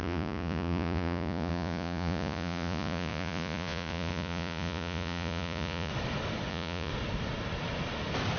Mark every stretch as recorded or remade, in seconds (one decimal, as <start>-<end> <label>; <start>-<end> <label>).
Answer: 0.0-5.9 remade; 5.9-6.5 recorded; 6.5-6.9 remade; 6.9-8.4 recorded